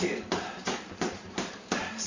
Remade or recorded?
remade